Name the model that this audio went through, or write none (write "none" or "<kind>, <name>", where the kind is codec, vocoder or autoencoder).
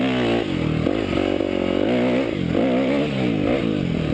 none